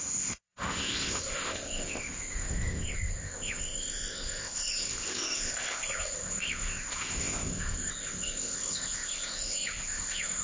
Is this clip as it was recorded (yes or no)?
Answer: no